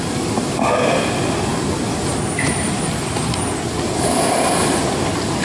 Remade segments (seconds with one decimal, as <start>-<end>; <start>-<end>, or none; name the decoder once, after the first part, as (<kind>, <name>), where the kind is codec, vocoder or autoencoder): none